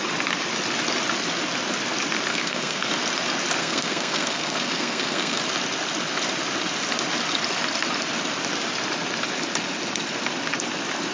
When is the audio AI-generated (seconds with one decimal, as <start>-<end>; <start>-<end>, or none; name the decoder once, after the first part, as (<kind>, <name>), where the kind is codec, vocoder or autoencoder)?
2.3-2.9 (codec, SNAC); 3.6-5.4